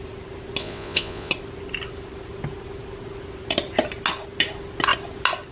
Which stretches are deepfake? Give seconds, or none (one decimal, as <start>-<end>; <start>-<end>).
0.6-1.3